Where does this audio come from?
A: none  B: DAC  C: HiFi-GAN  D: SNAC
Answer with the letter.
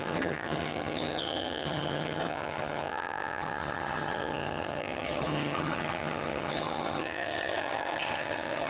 C